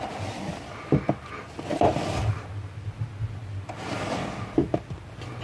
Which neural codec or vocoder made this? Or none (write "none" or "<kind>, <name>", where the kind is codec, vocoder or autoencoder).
none